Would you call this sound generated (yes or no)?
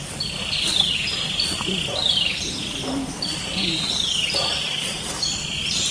no